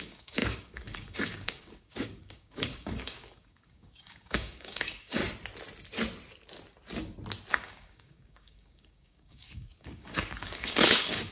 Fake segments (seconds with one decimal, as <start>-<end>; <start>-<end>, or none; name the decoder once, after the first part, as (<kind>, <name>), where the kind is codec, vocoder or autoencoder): 0.0-5.2 (codec, DAC); 7.5-11.3